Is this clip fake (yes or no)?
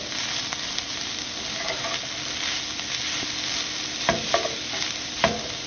no